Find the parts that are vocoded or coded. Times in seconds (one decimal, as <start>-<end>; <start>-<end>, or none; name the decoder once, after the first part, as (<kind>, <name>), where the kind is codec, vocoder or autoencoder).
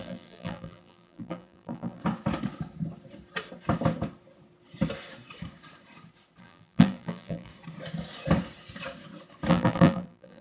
0.0-2.0 (vocoder, BigVGAN v2); 6.4-7.5; 9.5-10.4